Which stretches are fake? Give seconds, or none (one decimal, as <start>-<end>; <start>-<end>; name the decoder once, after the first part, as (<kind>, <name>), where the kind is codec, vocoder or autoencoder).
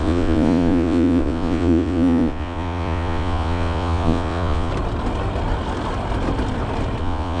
0.0-4.7 (vocoder, Vocos); 7.0-7.4